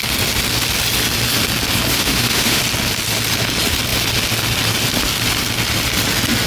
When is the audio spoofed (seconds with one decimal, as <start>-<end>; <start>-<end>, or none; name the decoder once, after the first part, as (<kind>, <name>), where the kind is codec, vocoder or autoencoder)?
1.9-2.6 (autoencoder, DAC-VAE)